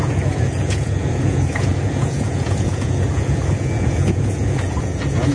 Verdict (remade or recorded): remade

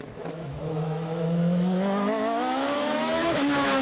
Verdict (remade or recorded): remade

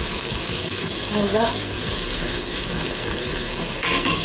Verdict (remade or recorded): remade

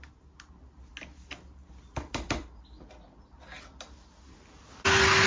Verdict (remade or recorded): recorded